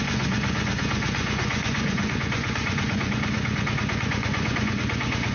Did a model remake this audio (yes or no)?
yes